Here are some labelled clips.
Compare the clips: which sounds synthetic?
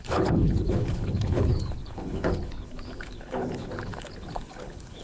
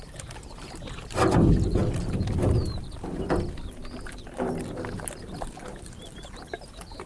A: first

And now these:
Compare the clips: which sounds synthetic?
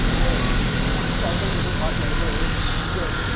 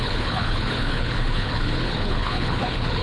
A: second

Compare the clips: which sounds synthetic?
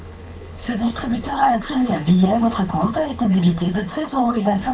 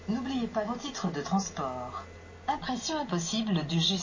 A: first